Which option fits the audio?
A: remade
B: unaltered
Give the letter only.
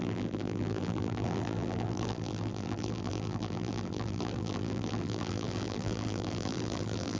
A